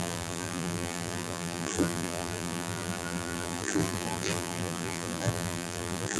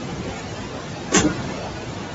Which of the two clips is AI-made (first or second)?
first